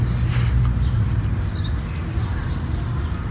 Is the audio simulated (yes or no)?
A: no